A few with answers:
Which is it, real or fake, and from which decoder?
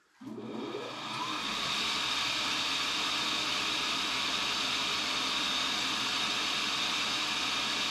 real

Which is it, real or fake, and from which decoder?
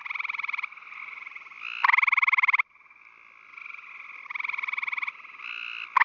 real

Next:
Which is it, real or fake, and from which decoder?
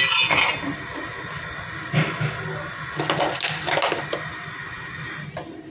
real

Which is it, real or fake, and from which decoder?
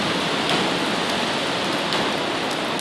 real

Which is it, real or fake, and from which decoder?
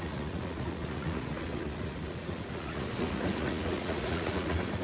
fake, vocoder, Vocos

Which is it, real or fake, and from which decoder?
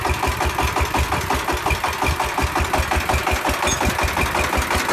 real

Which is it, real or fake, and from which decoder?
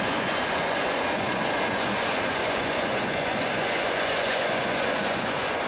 fake, vocoder, Vocos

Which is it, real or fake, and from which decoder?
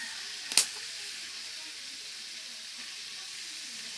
real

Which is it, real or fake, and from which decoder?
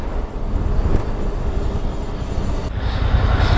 real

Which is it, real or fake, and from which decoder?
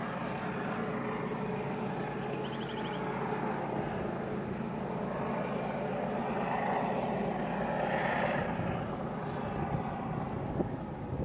real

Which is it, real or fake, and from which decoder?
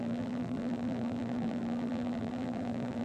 fake, vocoder, BigVGAN v2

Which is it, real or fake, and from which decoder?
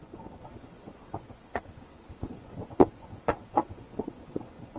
fake, vocoder, Vocos